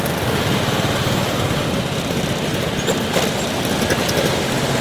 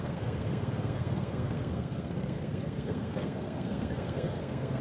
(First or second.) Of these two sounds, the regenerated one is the second